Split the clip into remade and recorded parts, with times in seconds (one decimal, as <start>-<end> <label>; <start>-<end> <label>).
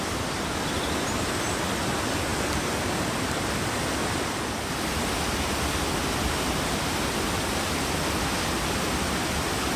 0.0-9.8 recorded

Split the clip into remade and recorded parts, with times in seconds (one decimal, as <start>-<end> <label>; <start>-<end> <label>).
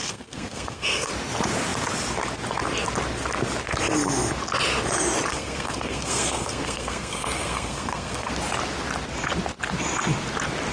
0.0-1.1 remade; 1.1-5.3 recorded; 5.3-8.3 remade; 8.3-10.7 recorded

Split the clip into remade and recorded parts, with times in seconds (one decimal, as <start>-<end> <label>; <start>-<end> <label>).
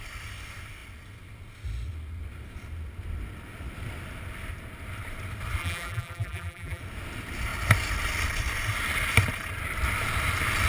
0.0-5.6 recorded; 5.6-6.8 remade; 6.8-10.7 recorded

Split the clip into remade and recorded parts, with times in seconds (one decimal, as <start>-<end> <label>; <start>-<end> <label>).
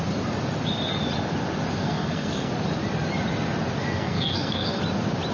0.0-1.8 recorded; 1.8-2.5 remade; 2.5-3.8 recorded; 3.8-4.8 remade; 4.8-5.3 recorded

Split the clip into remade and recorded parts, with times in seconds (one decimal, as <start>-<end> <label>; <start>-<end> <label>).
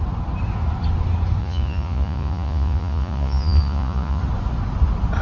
0.0-1.4 recorded; 1.4-4.2 remade; 4.2-5.2 recorded